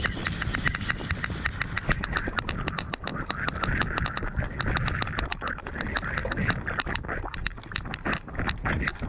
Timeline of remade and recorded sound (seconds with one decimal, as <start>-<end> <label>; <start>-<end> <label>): 0.0-3.1 remade; 3.1-4.6 recorded; 4.6-6.2 remade; 6.2-9.1 recorded